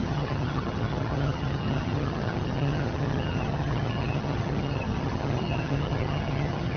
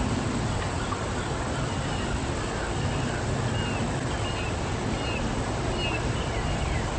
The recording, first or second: second